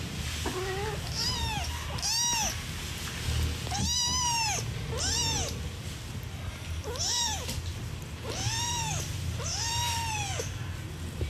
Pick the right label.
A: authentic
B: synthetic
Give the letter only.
A